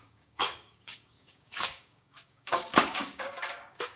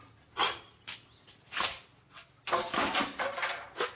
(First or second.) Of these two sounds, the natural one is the second